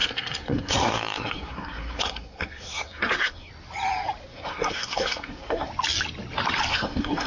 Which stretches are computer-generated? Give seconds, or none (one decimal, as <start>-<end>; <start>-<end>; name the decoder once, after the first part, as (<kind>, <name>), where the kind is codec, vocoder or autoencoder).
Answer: 0.0-3.5 (codec, SNAC); 4.2-5.7; 6.7-7.3